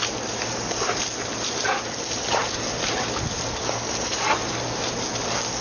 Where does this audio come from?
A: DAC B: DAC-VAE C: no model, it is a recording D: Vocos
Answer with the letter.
C